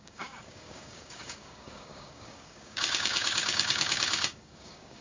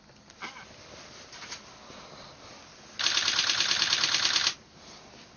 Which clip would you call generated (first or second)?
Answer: first